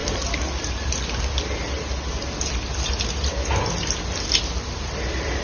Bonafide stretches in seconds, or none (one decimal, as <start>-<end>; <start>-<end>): 0.0-5.4